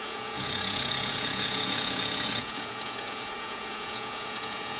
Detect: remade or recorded remade